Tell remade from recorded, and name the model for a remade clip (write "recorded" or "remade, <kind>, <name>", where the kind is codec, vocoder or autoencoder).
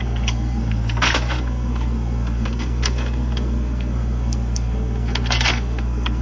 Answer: remade, codec, SNAC